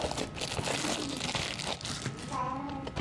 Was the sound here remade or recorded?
recorded